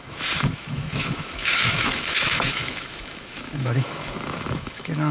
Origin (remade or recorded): remade